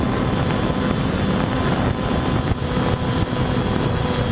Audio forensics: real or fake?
real